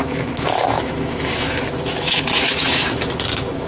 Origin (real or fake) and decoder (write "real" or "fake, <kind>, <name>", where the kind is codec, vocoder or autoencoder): fake, autoencoder, DAC-VAE